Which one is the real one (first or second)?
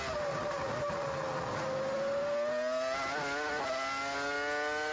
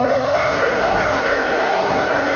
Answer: first